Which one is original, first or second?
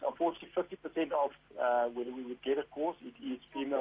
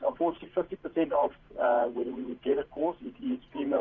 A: first